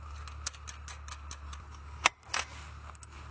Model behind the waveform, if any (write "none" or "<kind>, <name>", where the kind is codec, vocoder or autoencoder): none